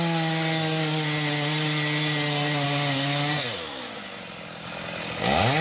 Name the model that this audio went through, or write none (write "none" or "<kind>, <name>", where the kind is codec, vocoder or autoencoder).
none